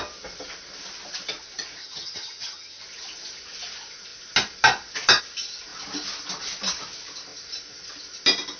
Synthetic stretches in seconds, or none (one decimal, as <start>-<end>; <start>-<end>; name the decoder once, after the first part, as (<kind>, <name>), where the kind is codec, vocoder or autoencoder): 1.8-2.8 (vocoder, HiFi-GAN)